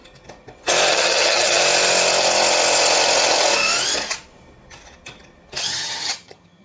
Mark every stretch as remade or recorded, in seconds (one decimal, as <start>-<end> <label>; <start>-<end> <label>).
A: 0.0-0.9 recorded; 0.9-1.6 remade; 1.6-5.6 recorded; 5.6-6.6 remade